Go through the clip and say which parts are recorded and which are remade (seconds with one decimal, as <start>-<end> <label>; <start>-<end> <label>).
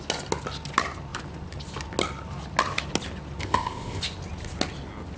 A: 0.0-3.4 recorded; 3.4-4.0 remade; 4.0-5.2 recorded